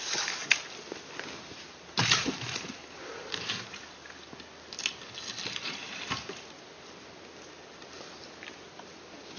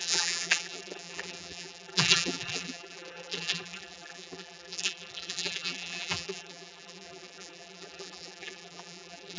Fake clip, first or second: second